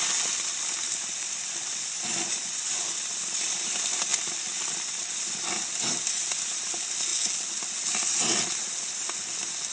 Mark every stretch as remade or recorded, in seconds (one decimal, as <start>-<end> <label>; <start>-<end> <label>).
0.0-2.4 recorded; 2.4-3.0 remade; 3.0-9.7 recorded